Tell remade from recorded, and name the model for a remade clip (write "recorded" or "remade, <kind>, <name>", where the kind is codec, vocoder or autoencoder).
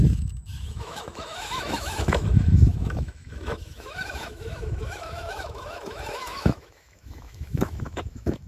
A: remade, autoencoder, DAC-VAE